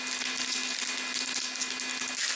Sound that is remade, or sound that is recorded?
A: recorded